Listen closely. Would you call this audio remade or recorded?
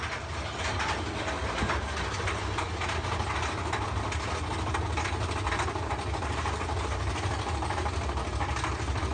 recorded